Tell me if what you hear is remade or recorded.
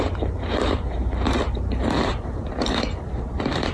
remade